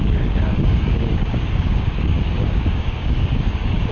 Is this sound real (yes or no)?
no